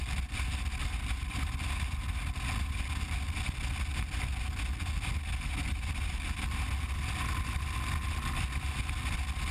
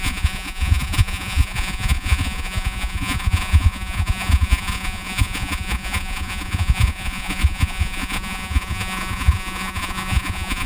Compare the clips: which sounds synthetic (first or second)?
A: second